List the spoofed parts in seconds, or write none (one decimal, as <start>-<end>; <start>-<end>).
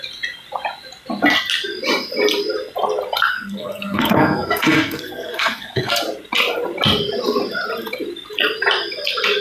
3.3-5.9